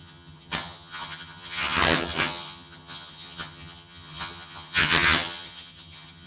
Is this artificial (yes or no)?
yes